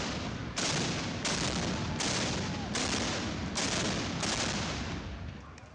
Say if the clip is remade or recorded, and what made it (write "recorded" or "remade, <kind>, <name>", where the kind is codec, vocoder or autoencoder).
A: recorded